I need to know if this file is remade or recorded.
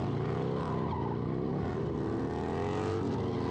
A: recorded